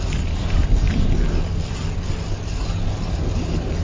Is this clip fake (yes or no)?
no